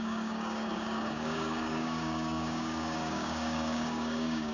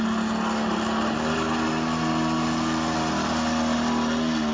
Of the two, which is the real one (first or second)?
second